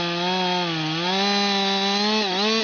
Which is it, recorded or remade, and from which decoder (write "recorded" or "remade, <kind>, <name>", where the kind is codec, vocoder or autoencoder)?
recorded